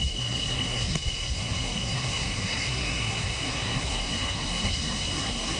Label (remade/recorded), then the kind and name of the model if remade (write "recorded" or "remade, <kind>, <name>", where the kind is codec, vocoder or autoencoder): remade, codec, SNAC